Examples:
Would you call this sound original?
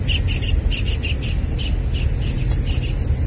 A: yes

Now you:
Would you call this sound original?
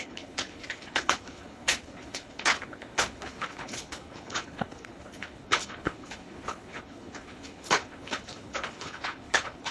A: no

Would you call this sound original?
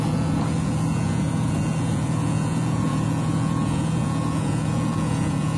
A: no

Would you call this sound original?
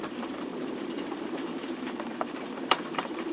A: no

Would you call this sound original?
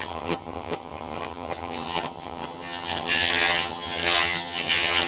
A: no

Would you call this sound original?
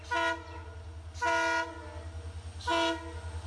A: yes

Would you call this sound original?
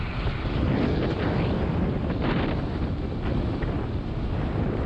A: yes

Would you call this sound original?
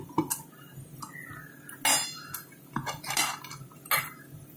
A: yes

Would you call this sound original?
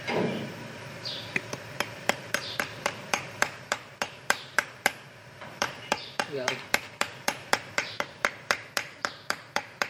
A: no